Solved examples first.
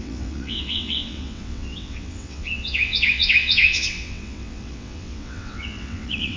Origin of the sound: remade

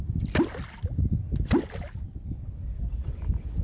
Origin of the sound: recorded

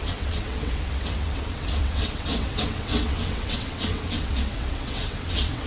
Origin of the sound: remade